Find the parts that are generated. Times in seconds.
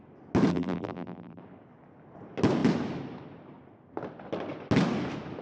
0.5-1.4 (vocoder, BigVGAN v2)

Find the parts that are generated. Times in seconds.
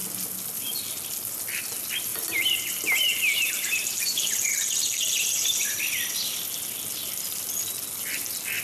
2.1-5.8 (vocoder, BigVGAN v2)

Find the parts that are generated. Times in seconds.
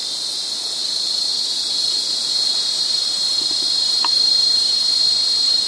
none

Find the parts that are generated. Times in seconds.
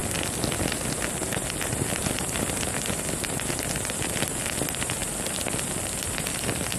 5.0-6.8 (vocoder, BigVGAN v2)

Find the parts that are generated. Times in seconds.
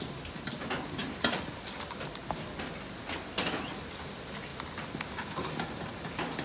none